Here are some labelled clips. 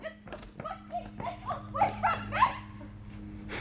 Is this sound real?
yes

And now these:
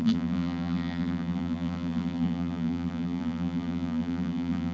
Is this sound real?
no